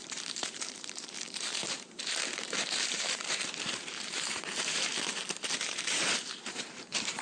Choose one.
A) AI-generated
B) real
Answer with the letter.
A